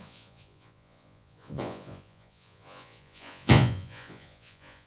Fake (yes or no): yes